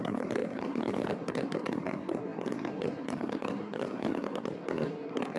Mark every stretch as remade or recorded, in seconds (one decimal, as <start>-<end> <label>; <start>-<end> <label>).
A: 0.0-5.4 remade